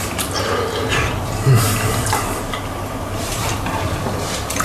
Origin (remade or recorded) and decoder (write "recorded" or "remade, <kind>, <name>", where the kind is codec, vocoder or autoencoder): recorded